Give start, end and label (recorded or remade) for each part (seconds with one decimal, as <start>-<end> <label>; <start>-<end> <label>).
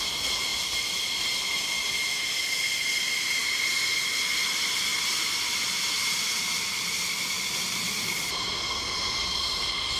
0.0-0.5 recorded; 0.5-1.5 remade; 1.5-4.9 recorded; 4.9-8.5 remade; 8.5-10.0 recorded